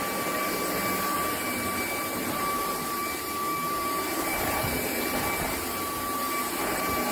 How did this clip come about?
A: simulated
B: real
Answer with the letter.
A